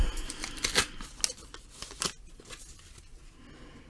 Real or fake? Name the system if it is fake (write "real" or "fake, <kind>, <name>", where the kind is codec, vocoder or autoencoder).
real